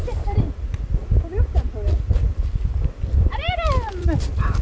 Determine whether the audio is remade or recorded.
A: remade